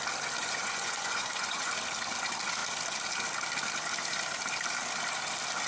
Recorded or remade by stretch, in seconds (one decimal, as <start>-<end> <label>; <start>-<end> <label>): 0.0-0.4 recorded; 0.4-1.7 remade; 1.7-5.7 recorded